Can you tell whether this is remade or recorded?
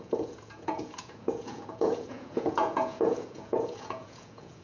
remade